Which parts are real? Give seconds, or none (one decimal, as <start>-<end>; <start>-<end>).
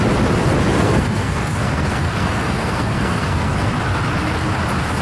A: 0.0-0.7; 3.7-5.0